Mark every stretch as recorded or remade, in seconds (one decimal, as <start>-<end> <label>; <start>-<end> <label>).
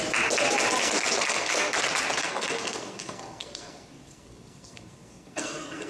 0.0-0.8 recorded; 0.8-1.8 remade; 1.8-2.2 recorded; 2.2-5.9 remade